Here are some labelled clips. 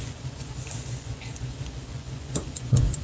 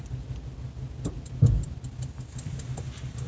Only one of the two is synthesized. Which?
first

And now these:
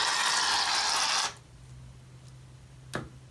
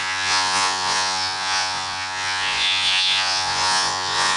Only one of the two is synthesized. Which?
second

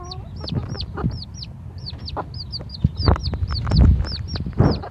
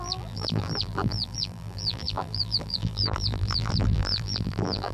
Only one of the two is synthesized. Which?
second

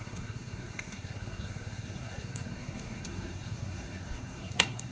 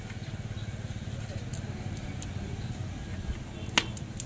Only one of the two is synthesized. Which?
first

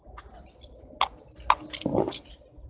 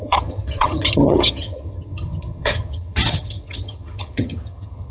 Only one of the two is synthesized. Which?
second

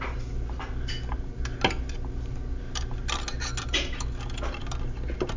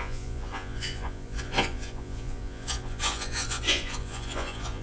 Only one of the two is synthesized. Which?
second